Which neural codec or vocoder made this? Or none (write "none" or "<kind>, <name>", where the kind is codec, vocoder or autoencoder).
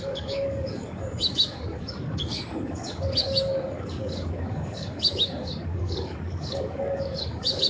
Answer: codec, DAC